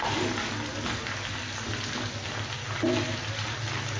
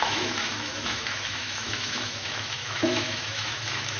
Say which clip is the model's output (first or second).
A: second